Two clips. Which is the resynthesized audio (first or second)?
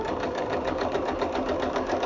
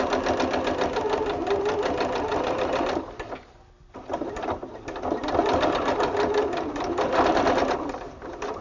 first